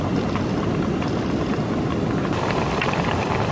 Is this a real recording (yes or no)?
yes